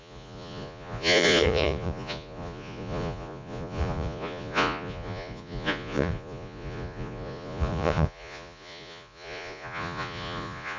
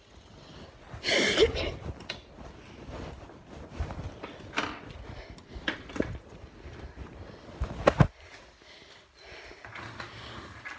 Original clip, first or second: second